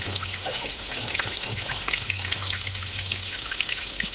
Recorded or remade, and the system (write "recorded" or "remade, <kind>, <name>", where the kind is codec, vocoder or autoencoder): remade, autoencoder, DAC-VAE